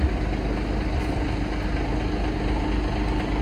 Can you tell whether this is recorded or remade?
recorded